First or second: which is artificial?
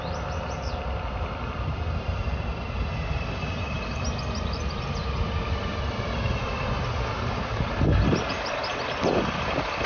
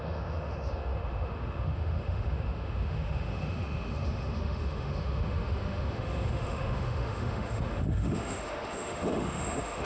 second